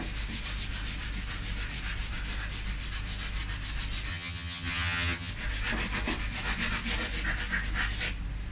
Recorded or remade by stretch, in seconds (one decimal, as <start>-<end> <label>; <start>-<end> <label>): 0.0-4.1 recorded; 4.1-5.3 remade; 5.3-8.5 recorded